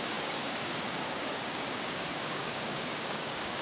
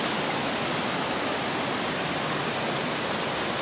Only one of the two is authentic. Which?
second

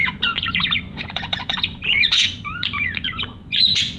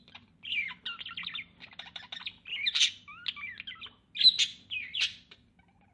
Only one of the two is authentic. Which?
second